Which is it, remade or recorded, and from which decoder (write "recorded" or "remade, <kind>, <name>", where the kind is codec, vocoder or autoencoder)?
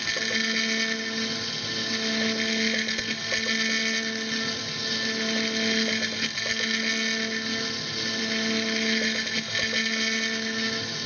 recorded